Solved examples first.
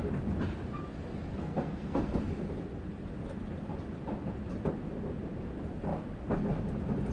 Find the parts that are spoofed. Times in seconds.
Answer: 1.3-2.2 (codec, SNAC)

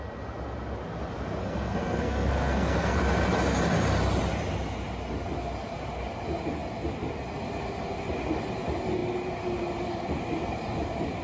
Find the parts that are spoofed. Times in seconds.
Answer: 1.4-3.0 (codec, SNAC)

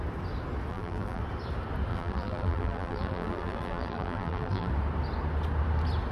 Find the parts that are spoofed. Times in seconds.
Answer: 0.7-1.2 (vocoder, BigVGAN v2); 1.9-4.7

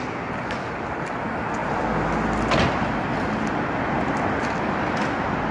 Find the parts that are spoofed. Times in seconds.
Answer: none

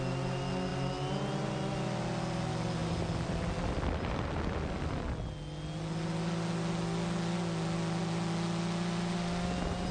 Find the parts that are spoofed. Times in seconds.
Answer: none